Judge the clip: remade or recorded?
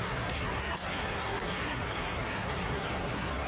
remade